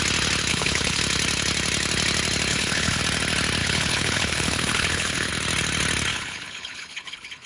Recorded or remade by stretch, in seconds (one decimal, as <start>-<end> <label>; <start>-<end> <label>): 0.0-0.5 recorded; 0.5-1.0 remade; 1.0-2.5 recorded; 2.5-3.0 remade; 3.0-3.6 recorded; 3.6-5.3 remade; 5.3-6.1 recorded; 6.1-7.5 remade